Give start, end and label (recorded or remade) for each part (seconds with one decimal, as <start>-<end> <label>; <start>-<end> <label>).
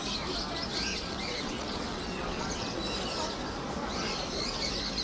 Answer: 0.0-0.9 recorded; 0.9-2.8 remade; 2.8-5.0 recorded